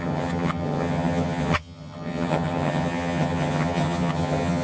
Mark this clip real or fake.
fake